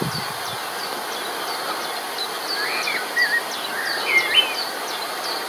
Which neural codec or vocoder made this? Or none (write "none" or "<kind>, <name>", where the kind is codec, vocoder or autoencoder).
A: none